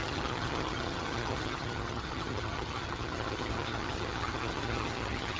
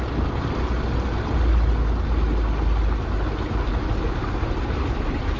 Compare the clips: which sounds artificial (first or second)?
first